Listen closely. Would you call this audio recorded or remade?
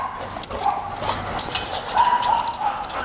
recorded